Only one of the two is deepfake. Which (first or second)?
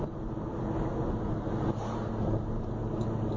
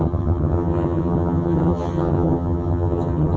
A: second